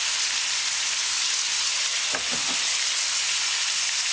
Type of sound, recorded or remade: recorded